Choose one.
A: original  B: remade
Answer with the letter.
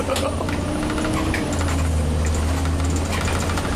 A